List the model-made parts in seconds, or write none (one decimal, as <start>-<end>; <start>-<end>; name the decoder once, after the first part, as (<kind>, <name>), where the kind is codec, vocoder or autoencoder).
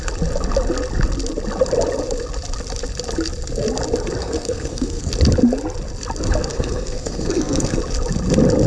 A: 4.2-5.1 (codec, SNAC); 6.5-7.8